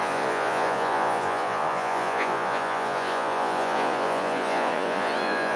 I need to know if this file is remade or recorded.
remade